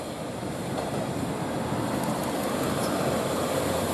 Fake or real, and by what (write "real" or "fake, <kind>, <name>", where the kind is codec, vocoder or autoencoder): fake, vocoder, BigVGAN v2